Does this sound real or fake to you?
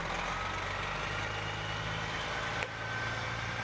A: real